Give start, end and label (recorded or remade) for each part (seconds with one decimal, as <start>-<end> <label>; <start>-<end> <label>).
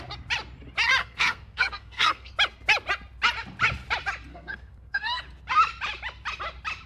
0.0-1.0 recorded; 1.0-2.3 remade; 2.3-4.3 recorded; 4.3-5.2 remade; 5.2-6.9 recorded